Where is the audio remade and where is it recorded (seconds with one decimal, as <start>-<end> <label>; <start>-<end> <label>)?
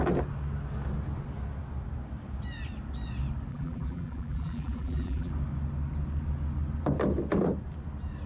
0.0-3.5 recorded; 3.5-5.3 remade; 5.3-8.3 recorded